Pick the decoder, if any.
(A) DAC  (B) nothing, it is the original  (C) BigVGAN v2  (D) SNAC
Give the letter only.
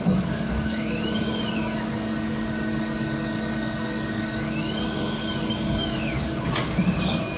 A